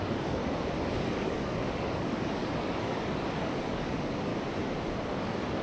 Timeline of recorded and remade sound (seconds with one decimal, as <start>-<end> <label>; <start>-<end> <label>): 0.0-0.4 remade; 0.4-1.0 recorded; 1.0-4.3 remade; 4.3-5.1 recorded; 5.1-5.6 remade